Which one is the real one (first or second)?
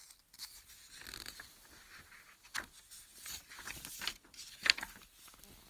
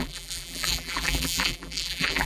first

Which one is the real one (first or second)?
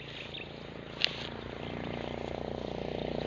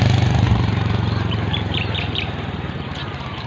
first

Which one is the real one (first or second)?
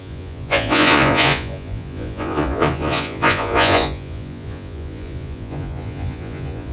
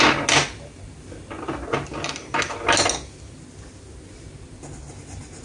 second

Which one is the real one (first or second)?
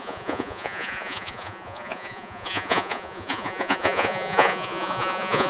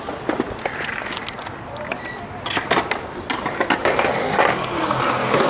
second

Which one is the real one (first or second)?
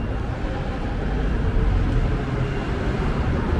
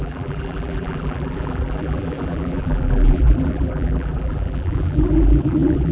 first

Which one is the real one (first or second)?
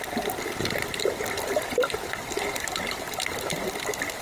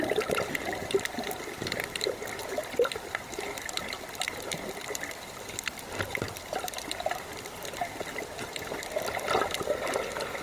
first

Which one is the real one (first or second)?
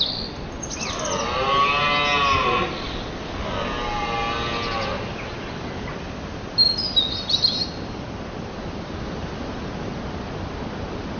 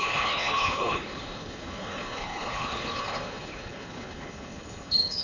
first